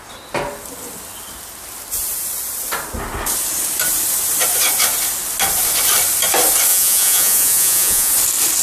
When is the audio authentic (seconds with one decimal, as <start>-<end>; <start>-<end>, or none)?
0.0-6.7; 8.1-8.6